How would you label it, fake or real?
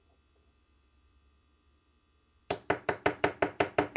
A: fake